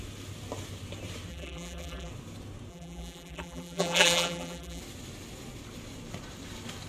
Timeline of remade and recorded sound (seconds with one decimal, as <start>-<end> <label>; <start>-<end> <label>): 0.0-1.3 recorded; 1.3-2.1 remade; 2.1-2.7 recorded; 2.7-4.8 remade; 4.8-6.9 recorded